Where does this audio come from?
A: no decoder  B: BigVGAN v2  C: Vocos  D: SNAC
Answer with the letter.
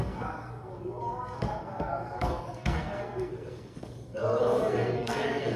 D